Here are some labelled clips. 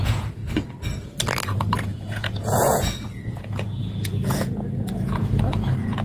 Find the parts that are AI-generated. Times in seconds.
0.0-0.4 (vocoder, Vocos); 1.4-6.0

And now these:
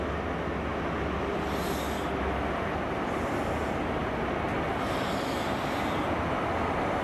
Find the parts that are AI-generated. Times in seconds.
none

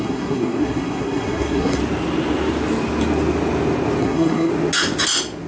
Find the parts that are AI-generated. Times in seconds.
0.0-1.8 (codec, SNAC); 4.0-4.5

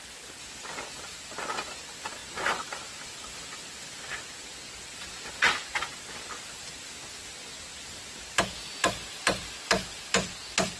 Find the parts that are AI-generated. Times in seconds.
none

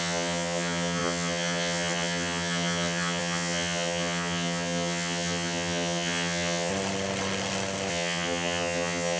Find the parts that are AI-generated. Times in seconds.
0.0-6.7 (vocoder, HiFi-GAN); 7.9-9.2

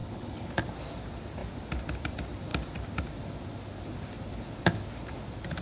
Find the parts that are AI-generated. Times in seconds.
0.0-0.5 (codec, HILCodec)